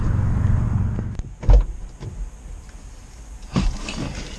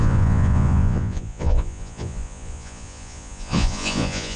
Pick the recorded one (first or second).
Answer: first